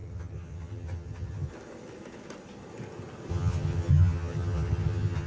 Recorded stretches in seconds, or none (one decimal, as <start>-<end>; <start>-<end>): 1.5-3.3